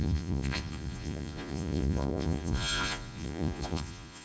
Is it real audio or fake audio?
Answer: fake